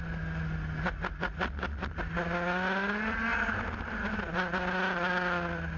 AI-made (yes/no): no